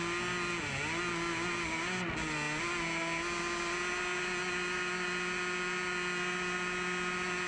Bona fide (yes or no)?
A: yes